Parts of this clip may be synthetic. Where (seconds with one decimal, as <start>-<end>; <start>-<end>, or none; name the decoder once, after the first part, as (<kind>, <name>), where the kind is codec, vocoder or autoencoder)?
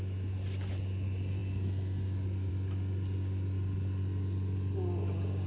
none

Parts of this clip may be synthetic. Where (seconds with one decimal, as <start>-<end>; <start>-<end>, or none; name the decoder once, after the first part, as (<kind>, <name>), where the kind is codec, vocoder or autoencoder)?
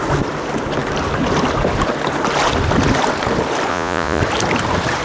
3.7-4.2 (vocoder, Vocos)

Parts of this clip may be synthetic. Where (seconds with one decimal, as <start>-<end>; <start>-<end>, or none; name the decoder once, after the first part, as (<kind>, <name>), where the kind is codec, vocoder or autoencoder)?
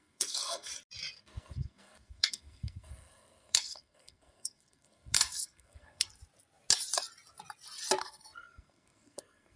0.0-0.7 (codec, SNAC); 1.2-6.1; 8.0-9.6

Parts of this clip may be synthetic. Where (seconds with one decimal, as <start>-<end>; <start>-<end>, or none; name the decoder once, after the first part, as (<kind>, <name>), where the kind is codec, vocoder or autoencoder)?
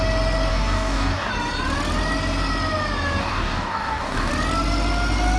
0.5-1.3 (codec, DAC); 3.2-4.3